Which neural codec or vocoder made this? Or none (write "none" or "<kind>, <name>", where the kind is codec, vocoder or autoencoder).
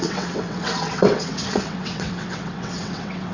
vocoder, WaveNeXt